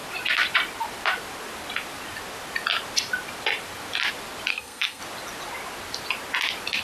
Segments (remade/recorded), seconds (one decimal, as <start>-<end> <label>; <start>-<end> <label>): 0.0-4.5 recorded; 4.5-5.0 remade; 5.0-6.8 recorded

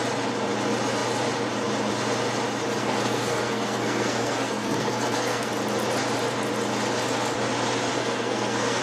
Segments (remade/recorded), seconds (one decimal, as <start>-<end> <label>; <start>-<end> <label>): 0.0-2.8 recorded; 2.8-5.5 remade; 5.5-7.9 recorded; 7.9-8.8 remade

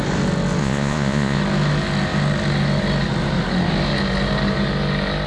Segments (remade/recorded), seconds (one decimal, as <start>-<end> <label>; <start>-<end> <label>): 0.0-0.6 recorded; 0.6-1.4 remade; 1.4-5.3 recorded

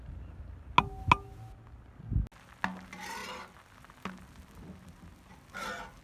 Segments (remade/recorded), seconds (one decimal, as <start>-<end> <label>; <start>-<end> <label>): 0.0-6.0 recorded

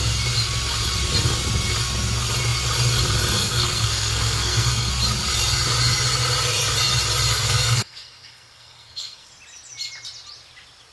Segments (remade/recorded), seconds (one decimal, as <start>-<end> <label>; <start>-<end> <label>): 0.0-3.4 recorded; 3.4-4.9 remade; 4.9-7.3 recorded; 7.3-9.3 remade; 9.3-10.9 recorded

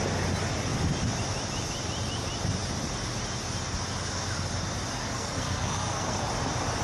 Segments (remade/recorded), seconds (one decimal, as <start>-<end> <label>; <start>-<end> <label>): 0.0-5.0 recorded; 5.0-6.3 remade; 6.3-6.8 recorded

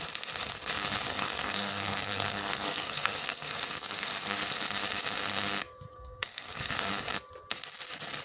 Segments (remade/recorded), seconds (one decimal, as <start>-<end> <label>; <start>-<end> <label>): 0.0-1.1 recorded; 1.1-4.5 remade; 4.5-5.9 recorded; 5.9-6.9 remade; 6.9-8.2 recorded